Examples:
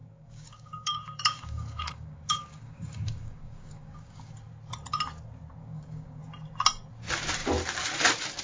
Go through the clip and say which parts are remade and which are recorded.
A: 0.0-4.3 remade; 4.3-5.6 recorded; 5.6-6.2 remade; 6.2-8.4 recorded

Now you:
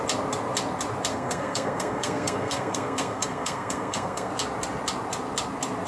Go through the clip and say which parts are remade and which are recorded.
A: 0.0-1.1 recorded; 1.1-4.3 remade; 4.3-5.9 recorded

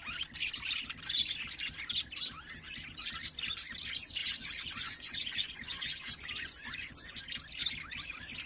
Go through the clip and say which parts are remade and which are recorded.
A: 0.0-4.2 recorded; 4.2-7.2 remade; 7.2-8.5 recorded

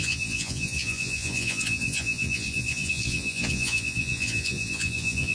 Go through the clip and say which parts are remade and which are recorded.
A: 0.0-5.3 remade

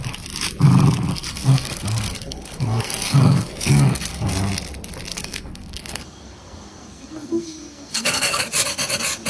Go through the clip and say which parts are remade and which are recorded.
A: 0.0-1.1 recorded; 1.1-4.3 remade; 4.3-5.1 recorded; 5.1-8.4 remade; 8.4-9.3 recorded